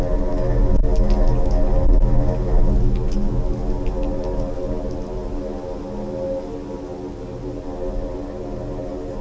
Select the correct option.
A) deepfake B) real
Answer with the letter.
B